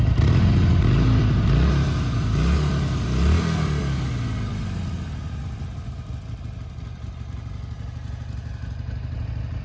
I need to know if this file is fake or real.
real